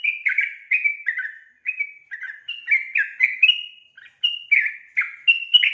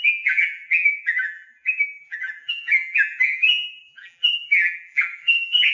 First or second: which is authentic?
first